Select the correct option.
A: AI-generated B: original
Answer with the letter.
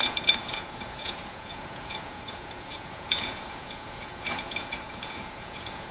A